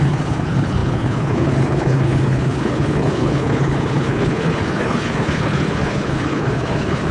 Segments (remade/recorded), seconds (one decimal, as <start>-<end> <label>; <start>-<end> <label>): 0.0-7.1 remade